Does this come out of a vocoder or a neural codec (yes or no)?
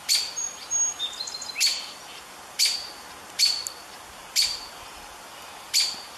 no